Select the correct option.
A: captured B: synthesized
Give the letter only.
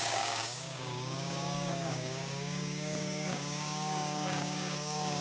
B